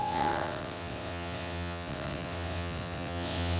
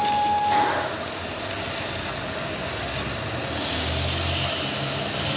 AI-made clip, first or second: first